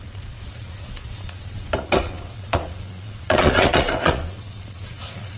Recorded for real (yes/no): no